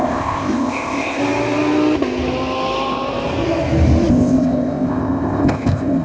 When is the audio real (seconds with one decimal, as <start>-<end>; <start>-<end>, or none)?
1.2-4.1